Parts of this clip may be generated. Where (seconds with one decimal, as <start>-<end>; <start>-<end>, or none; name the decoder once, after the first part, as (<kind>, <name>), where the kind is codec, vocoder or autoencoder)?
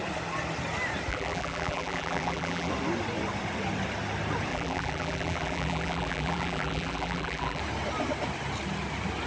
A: 1.1-2.7 (vocoder, BigVGAN v2); 4.5-7.6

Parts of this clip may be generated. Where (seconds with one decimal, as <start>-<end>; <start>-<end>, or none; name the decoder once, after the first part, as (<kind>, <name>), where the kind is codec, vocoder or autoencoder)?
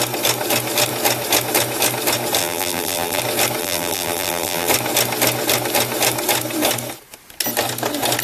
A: 2.4-3.2 (vocoder, BigVGAN v2); 3.6-4.7